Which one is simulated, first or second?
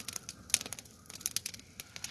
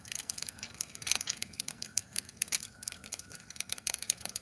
second